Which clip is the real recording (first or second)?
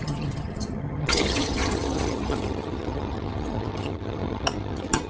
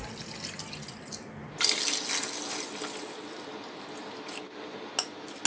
second